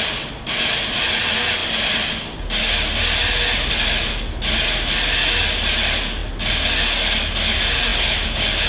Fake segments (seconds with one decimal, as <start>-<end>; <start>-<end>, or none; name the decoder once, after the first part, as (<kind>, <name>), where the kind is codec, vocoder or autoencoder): none